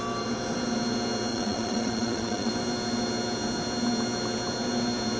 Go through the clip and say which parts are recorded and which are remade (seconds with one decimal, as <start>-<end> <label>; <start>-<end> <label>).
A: 0.0-1.3 recorded; 1.3-2.5 remade; 2.5-5.2 recorded

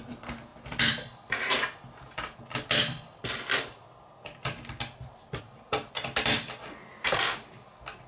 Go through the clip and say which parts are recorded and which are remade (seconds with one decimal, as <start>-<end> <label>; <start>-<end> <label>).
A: 0.0-8.1 recorded

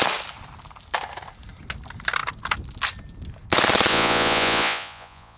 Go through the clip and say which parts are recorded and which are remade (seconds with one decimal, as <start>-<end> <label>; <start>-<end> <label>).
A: 0.0-3.9 recorded; 3.9-5.4 remade

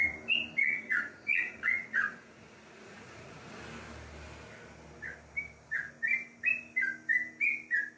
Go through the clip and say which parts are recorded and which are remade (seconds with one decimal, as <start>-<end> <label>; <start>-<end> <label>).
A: 0.0-0.6 recorded; 0.6-3.6 remade; 3.6-8.0 recorded

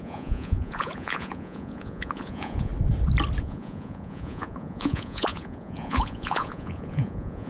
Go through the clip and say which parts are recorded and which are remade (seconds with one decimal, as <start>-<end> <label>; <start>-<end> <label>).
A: 0.0-2.7 remade; 2.7-3.4 recorded; 3.4-7.5 remade

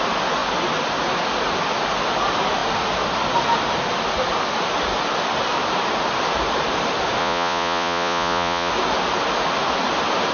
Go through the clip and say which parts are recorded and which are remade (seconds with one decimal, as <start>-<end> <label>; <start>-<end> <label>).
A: 0.0-7.2 recorded; 7.2-8.7 remade; 8.7-10.3 recorded

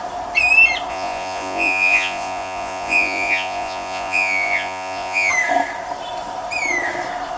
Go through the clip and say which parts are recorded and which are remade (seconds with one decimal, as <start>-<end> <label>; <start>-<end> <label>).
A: 0.0-0.9 recorded; 0.9-5.3 remade; 5.3-7.4 recorded

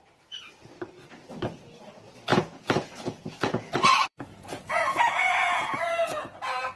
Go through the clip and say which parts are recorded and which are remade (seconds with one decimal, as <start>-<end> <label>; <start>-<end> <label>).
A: 0.0-2.3 recorded; 2.3-6.8 remade